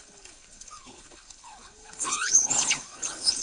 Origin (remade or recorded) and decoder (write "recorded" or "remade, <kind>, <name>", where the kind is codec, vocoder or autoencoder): remade, codec, HILCodec